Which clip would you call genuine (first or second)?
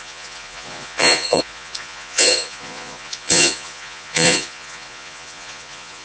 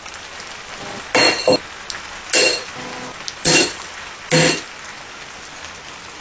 second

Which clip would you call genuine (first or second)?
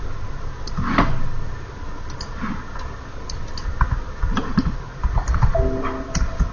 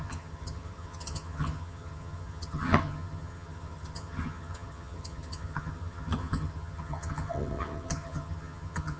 first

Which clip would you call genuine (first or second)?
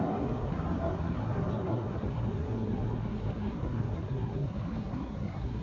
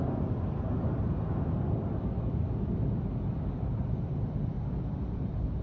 second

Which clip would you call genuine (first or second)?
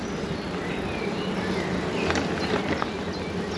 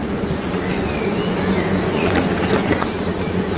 first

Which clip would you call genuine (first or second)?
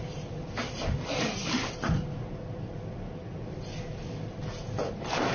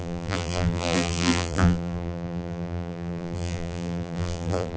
first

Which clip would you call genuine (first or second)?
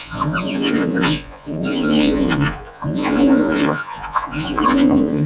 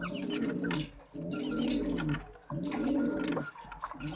second